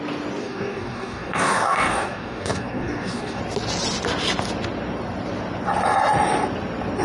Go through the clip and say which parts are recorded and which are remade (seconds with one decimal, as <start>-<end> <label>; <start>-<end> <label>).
0.0-0.4 recorded; 0.4-3.4 remade; 3.4-7.0 recorded